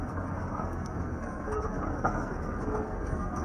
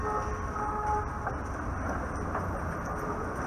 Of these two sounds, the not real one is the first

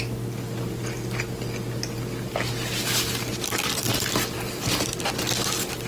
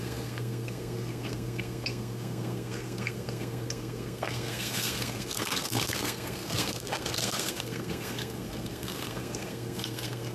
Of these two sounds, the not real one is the second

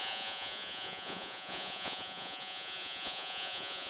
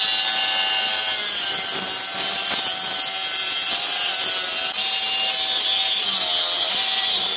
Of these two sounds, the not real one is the first